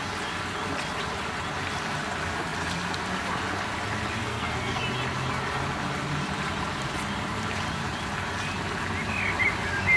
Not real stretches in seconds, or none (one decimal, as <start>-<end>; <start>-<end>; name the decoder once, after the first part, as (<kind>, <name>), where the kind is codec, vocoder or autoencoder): 4.2-4.8 (codec, SNAC)